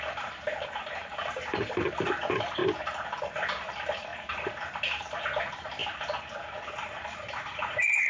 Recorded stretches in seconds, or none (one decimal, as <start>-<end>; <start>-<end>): 2.6-3.2; 5.8-6.8